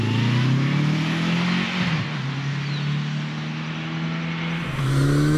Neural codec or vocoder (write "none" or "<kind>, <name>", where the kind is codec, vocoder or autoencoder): none